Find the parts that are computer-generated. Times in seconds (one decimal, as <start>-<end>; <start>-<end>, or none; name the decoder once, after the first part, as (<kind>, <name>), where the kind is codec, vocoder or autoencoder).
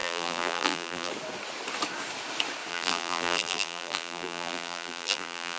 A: 0.0-1.1 (vocoder, BigVGAN v2); 2.7-5.6